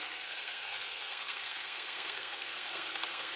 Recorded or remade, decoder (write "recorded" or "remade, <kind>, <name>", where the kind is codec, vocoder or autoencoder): remade, codec, SNAC